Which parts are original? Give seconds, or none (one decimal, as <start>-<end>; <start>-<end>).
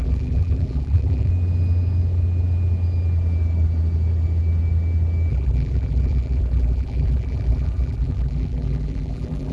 1.3-5.3